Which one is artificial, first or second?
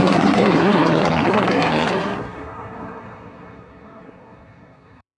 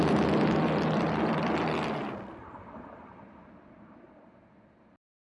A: first